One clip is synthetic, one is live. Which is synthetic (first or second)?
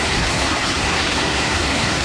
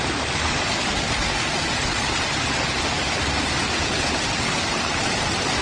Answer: first